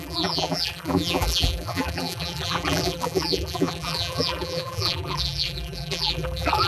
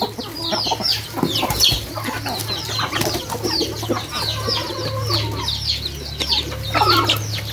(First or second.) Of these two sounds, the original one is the second